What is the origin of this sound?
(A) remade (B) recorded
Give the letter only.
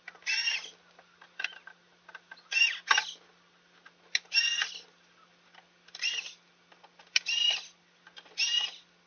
B